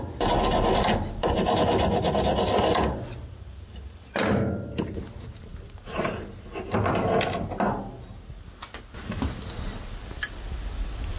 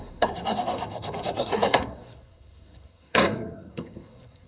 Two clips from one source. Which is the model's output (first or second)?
second